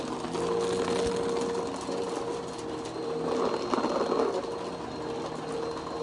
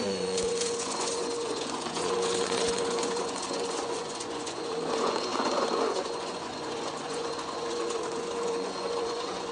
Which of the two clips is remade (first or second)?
second